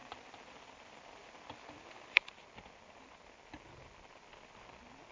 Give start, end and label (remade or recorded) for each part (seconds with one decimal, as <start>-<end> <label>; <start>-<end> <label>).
0.0-5.1 recorded